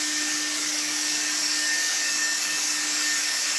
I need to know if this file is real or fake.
fake